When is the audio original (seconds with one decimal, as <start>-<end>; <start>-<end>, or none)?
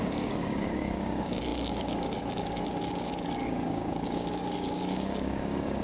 none